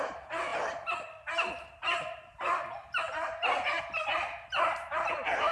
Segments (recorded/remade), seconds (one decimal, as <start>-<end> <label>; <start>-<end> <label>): 0.0-5.5 recorded